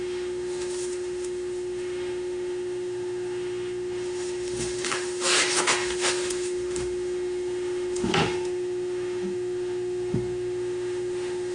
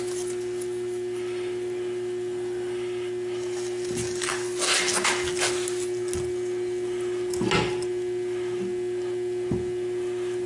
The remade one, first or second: first